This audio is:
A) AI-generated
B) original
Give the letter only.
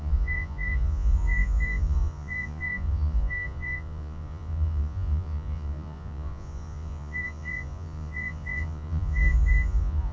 A